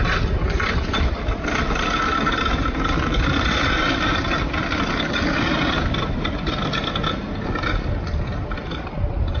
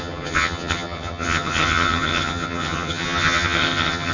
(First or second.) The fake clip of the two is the second